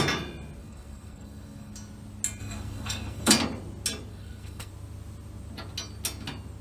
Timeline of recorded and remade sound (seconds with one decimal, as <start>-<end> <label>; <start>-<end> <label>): 0.0-0.6 recorded; 0.6-1.7 remade; 1.7-2.4 recorded; 2.4-3.3 remade; 3.3-4.1 recorded; 4.1-4.7 remade; 4.7-6.6 recorded